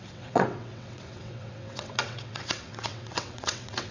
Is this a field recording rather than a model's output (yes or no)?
no